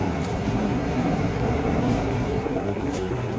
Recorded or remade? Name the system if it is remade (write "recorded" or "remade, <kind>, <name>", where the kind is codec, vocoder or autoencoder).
remade, codec, SNAC